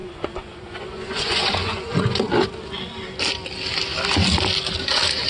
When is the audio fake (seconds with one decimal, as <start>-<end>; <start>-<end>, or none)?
0.0-2.3